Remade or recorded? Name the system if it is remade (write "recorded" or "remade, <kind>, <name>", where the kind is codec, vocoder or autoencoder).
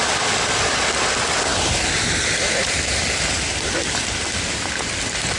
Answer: recorded